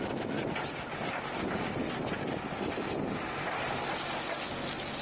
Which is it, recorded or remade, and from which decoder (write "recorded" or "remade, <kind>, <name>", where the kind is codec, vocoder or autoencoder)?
recorded